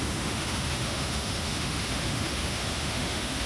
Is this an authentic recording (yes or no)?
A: no